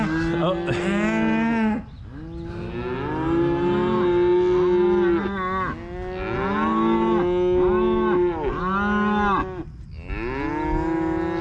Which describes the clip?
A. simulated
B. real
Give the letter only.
B